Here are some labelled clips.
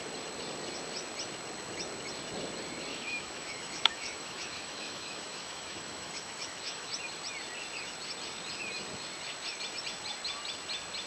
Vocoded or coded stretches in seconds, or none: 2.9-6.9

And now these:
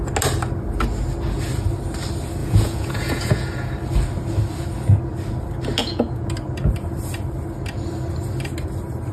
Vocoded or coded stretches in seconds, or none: 2.4-3.7; 5.8-6.3

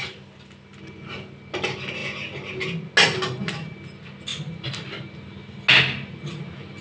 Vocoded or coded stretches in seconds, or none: none

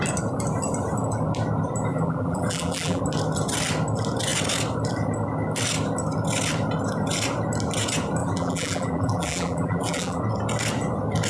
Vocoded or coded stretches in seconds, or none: 1.9-3.0; 8.2-10.2

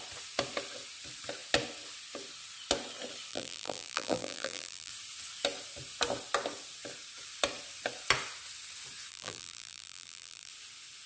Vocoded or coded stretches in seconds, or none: 3.3-4.9; 9.1-10.5